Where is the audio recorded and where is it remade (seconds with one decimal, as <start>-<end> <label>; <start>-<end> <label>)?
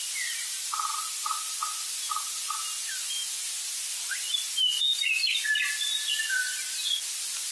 0.0-7.5 recorded